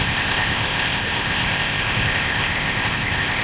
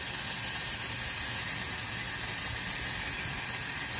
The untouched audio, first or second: second